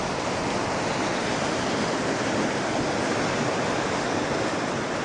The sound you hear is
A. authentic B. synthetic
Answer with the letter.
A